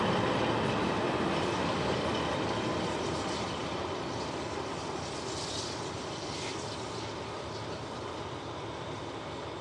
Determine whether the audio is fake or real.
real